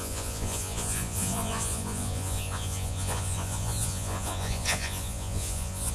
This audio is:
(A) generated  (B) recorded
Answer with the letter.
A